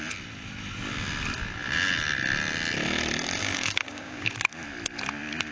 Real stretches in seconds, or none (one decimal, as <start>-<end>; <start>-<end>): 0.0-3.4; 4.3-5.5